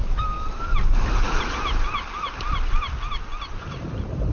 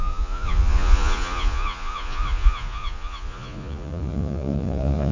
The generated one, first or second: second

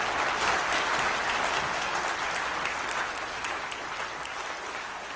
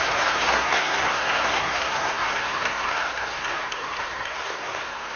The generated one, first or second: second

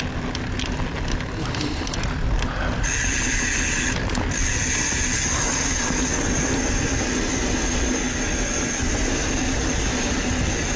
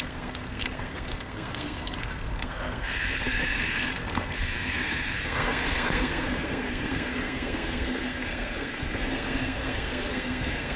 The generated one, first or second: second